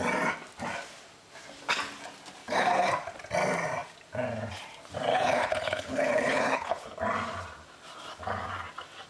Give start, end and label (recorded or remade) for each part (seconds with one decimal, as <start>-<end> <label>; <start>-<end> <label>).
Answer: 0.0-2.4 recorded; 2.4-2.9 remade; 2.9-5.1 recorded; 5.1-7.0 remade; 7.0-9.1 recorded